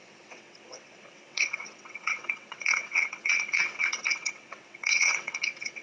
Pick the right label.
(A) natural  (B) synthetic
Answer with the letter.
B